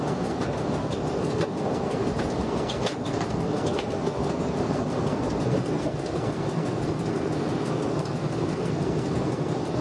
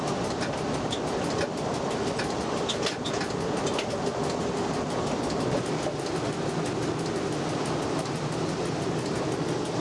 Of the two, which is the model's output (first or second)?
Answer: first